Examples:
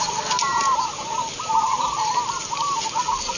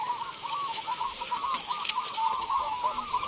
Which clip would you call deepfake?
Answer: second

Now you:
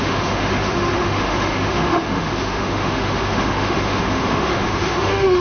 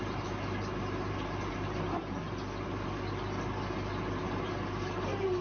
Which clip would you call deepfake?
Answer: first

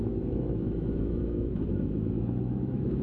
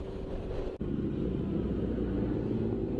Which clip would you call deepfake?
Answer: first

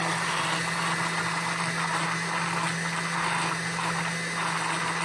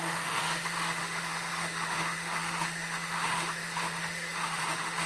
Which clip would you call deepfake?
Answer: second